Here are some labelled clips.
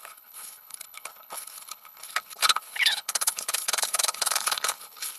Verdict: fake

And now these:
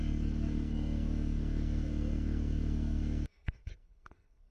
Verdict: fake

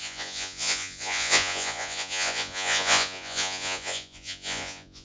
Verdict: fake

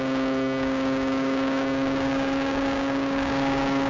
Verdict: fake